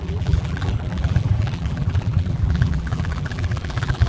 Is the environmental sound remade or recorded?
remade